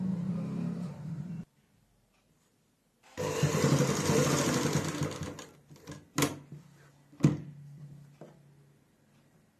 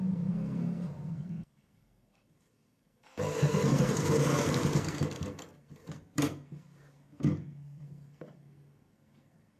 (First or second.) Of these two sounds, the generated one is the second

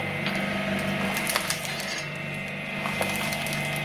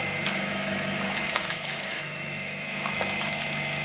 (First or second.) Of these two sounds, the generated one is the second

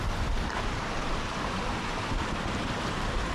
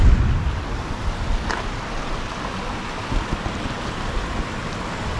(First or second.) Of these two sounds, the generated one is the first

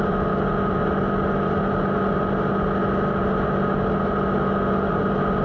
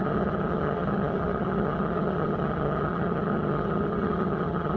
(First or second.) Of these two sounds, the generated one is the second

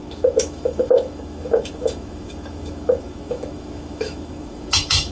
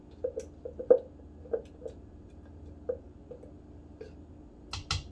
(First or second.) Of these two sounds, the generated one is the first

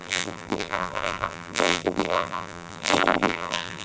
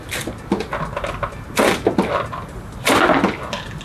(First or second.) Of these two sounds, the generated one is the first